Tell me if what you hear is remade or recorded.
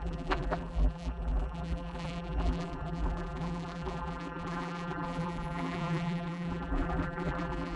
remade